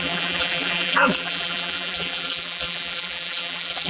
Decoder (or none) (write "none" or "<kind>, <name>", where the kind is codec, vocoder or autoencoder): vocoder, BigVGAN v2